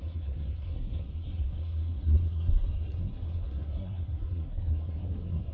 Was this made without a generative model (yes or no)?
no